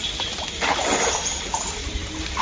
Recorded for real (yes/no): yes